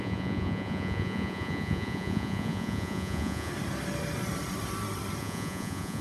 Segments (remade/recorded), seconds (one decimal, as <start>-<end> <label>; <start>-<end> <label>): 0.0-3.5 remade; 3.5-5.2 recorded; 5.2-6.0 remade